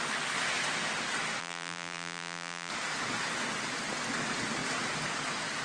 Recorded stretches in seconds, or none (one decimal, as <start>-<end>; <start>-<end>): 0.0-1.4; 2.7-5.6